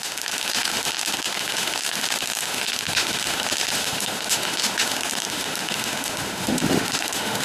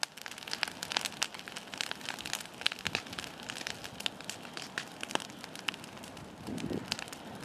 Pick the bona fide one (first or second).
second